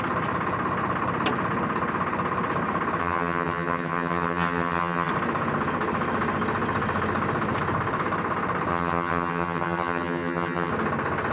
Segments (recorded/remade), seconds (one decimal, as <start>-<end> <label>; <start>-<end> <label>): 0.0-3.0 recorded; 3.0-5.1 remade; 5.1-8.7 recorded; 8.7-10.7 remade; 10.7-11.3 recorded